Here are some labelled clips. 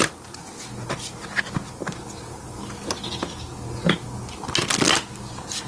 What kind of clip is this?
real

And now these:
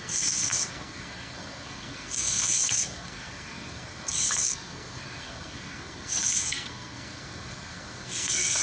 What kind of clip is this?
fake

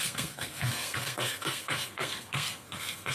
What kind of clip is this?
fake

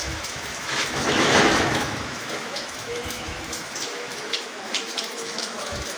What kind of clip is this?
fake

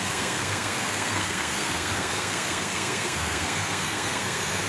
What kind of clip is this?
fake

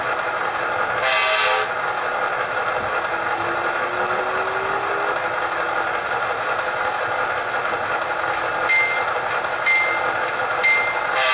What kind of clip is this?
real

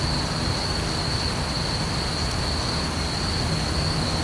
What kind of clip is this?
real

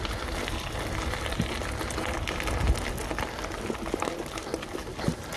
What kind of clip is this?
real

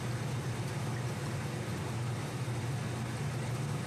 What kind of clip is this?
real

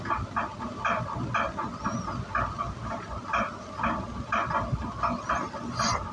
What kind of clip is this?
real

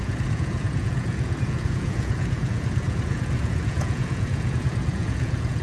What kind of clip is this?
fake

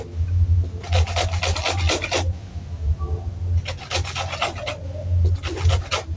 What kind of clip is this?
real